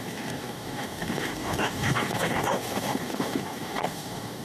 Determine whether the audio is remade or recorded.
remade